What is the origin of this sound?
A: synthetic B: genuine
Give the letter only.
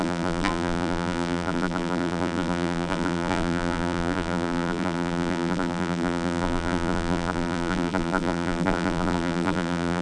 A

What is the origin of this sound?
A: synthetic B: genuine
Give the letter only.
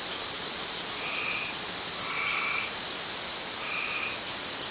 B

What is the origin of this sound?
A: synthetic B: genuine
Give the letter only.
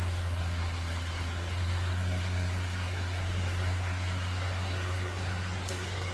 A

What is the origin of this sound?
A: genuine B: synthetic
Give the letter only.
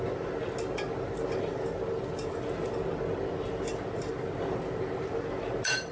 A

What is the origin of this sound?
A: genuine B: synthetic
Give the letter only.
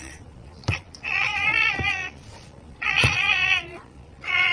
B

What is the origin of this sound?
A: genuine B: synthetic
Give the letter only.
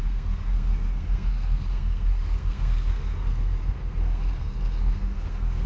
B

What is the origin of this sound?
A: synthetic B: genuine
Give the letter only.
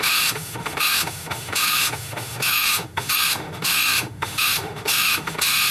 A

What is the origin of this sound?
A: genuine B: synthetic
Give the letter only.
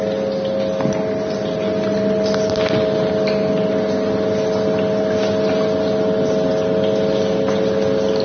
A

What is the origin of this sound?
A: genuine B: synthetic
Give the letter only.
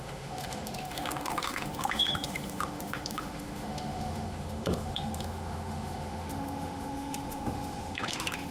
B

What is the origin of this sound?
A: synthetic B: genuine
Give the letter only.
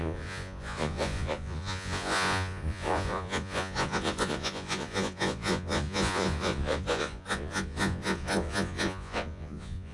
A